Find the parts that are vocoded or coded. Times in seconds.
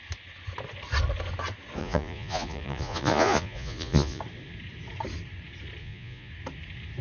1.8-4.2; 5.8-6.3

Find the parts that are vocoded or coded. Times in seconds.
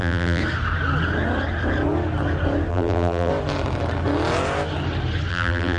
0.0-0.4; 2.7-3.3; 5.3-5.8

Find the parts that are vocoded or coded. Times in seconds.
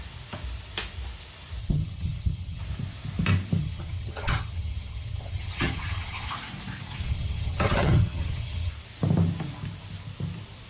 1.6-2.6; 3.6-6.3; 7.0-8.7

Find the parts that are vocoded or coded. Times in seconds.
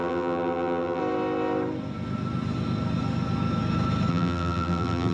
0.0-1.0; 4.1-5.1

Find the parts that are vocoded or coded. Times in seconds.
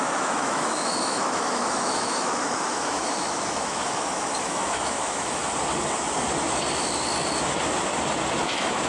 0.0-5.4; 8.4-8.9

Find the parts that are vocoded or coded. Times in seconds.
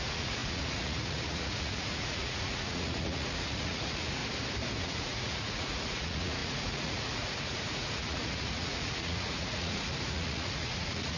0.0-4.2; 4.8-11.2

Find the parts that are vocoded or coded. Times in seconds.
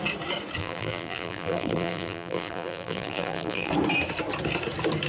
0.6-3.7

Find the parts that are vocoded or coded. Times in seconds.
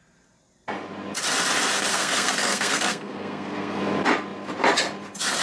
1.9-3.8